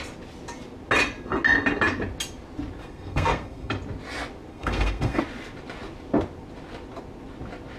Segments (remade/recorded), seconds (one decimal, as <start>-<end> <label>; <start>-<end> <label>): 0.0-2.8 recorded; 2.8-3.7 remade; 3.7-4.5 recorded; 4.5-5.2 remade; 5.2-7.8 recorded